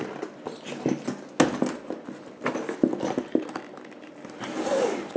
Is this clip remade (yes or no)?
no